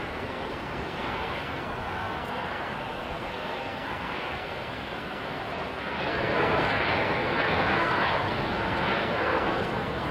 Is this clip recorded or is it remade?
remade